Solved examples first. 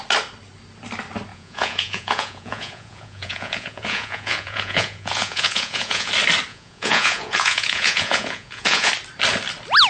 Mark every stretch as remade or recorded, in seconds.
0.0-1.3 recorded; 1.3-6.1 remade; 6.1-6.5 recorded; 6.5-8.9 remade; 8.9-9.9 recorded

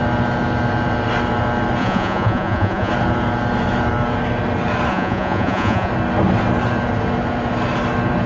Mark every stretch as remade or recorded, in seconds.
0.0-1.8 recorded; 1.8-2.9 remade; 2.9-4.9 recorded; 4.9-5.9 remade; 5.9-8.3 recorded